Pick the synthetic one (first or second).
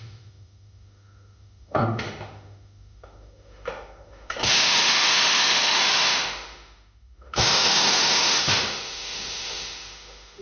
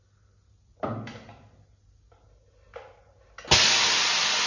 first